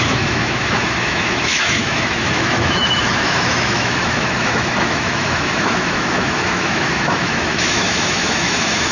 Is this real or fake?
fake